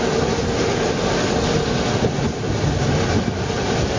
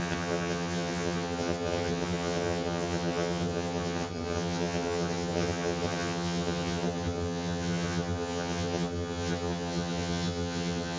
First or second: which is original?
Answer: first